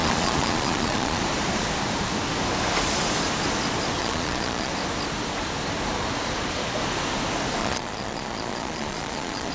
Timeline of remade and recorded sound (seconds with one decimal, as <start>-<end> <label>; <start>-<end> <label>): 0.0-1.2 remade; 1.2-4.0 recorded; 4.0-4.7 remade; 4.7-7.6 recorded; 7.6-9.5 remade